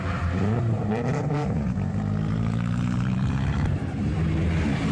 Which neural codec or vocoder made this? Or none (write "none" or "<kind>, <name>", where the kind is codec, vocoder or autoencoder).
vocoder, BigVGAN v2